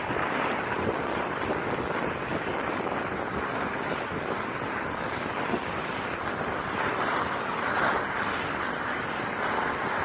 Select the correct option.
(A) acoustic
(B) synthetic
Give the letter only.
A